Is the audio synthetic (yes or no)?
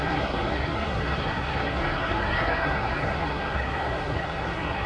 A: yes